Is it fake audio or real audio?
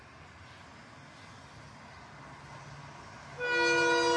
real